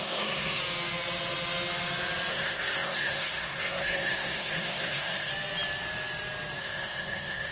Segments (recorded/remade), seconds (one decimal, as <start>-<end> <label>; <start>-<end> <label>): 0.0-0.6 remade; 0.6-2.3 recorded; 2.3-5.3 remade; 5.3-6.6 recorded; 6.6-7.5 remade